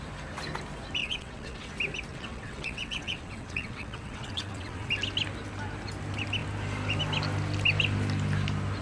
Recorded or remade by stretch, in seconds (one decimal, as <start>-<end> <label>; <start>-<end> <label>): 0.0-1.0 recorded; 1.0-1.7 remade; 1.7-2.1 recorded; 2.1-4.9 remade; 4.9-8.8 recorded